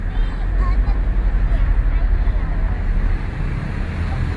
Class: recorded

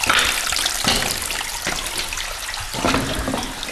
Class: recorded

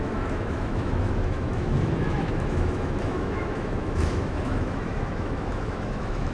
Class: remade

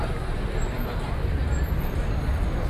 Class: recorded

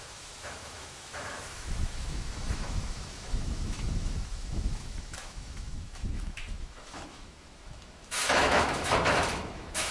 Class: remade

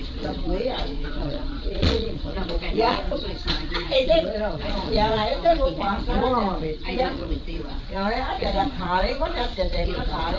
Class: remade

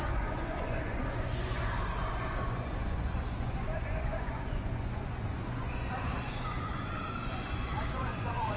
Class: remade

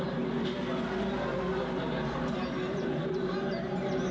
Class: recorded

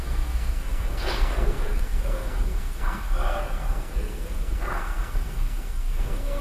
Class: remade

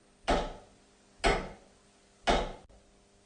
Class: recorded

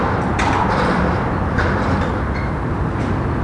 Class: recorded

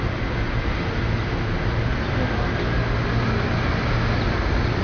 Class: recorded